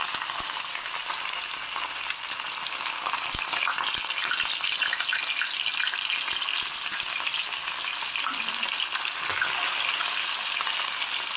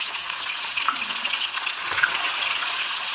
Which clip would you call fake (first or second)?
second